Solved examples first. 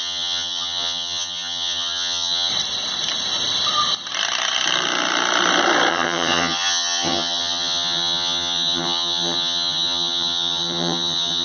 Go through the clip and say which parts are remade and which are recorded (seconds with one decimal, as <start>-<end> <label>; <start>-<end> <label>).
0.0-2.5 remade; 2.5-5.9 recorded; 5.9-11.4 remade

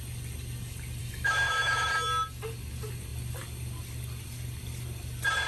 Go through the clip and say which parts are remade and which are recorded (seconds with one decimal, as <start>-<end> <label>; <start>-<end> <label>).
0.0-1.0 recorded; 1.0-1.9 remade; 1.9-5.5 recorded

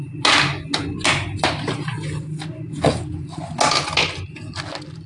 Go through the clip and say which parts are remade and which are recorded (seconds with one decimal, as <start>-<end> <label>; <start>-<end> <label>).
0.0-5.1 recorded

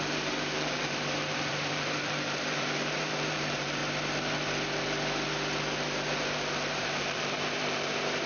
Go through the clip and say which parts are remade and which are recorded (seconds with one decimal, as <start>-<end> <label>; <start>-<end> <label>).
0.0-3.8 remade; 3.8-6.7 recorded; 6.7-8.3 remade

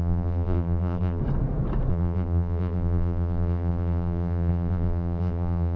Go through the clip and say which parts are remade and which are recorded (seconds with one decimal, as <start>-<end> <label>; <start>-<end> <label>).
0.0-1.2 remade; 1.2-1.9 recorded; 1.9-5.8 remade

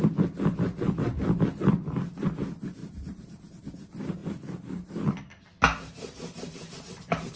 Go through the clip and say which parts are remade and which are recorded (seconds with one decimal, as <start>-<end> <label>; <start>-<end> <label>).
0.0-7.4 recorded

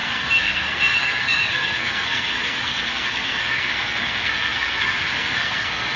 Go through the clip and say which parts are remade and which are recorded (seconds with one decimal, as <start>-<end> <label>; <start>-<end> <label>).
0.0-6.0 remade